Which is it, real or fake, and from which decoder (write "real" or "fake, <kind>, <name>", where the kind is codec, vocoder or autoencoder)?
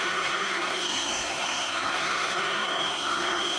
fake, codec, SNAC